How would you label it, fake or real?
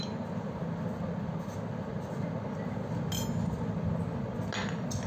real